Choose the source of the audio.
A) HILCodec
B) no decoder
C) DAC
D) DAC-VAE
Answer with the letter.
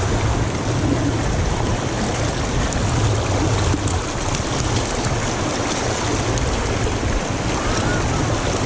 B